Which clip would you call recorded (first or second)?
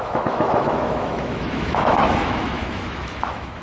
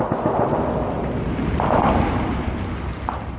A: second